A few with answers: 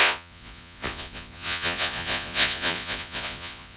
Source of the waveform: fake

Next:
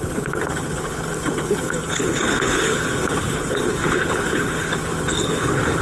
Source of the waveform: fake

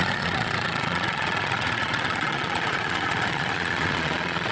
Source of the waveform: fake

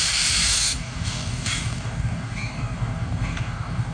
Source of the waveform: fake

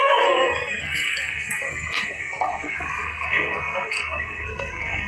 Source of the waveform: fake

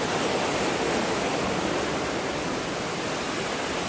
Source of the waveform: real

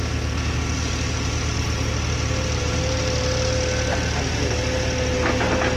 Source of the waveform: real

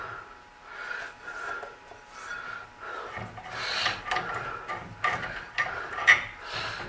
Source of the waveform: real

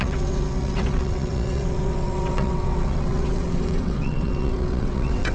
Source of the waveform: fake